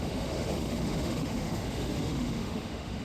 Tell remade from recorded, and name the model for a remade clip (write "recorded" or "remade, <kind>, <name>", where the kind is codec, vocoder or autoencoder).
remade, autoencoder, DAC-VAE